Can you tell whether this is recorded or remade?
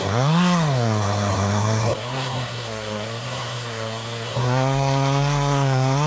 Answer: remade